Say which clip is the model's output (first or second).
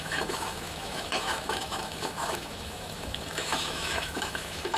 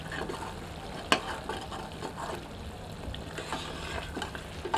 first